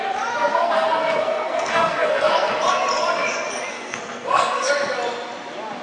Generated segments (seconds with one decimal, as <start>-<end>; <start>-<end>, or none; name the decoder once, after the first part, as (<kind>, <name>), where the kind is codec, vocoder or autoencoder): 0.5-2.5 (codec, SNAC); 3.7-4.7